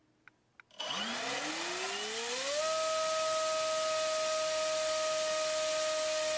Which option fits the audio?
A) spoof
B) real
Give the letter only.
B